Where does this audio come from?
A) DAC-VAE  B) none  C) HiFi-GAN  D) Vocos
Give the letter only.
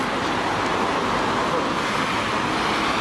B